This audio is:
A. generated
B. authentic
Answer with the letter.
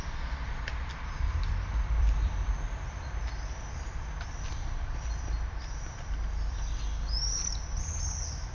A